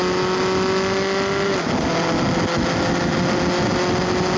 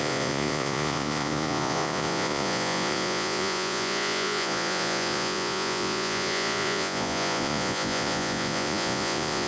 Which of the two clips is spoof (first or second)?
second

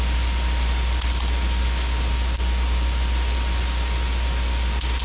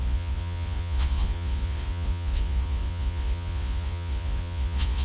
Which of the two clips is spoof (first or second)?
second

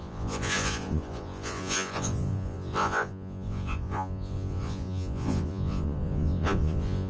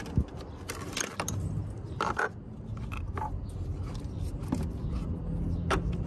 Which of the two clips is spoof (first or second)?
first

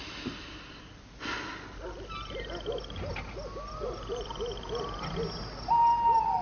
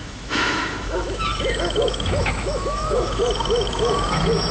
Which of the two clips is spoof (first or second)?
second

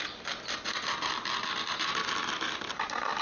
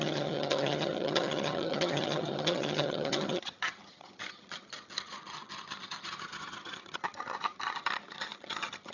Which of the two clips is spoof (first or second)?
second